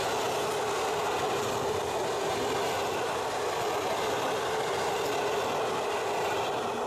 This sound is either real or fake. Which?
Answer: real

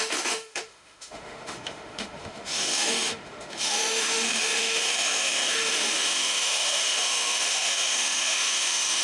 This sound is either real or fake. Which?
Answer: fake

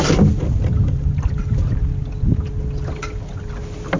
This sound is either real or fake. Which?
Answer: real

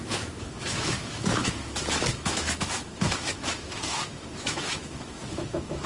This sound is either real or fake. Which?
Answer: fake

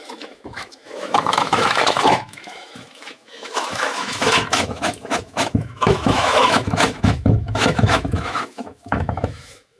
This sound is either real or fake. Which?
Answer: fake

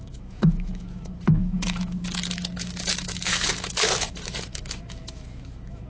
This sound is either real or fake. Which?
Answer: fake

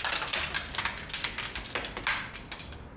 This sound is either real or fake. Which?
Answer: real